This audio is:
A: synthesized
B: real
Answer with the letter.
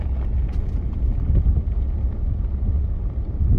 B